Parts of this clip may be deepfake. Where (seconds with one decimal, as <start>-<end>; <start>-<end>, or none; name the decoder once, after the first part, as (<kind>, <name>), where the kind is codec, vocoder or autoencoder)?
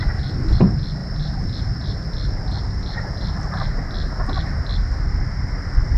none